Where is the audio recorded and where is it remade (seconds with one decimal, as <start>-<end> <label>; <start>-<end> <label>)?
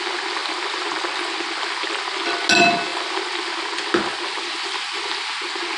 0.0-5.8 recorded